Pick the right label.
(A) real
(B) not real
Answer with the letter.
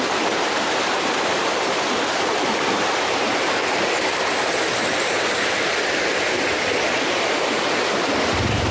B